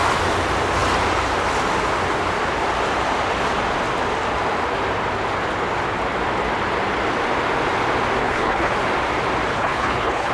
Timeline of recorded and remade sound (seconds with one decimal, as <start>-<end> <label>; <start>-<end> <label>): 0.0-8.2 recorded; 8.2-8.7 remade; 8.7-9.5 recorded; 9.5-10.3 remade